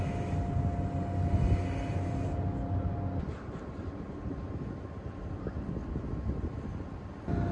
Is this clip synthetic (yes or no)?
no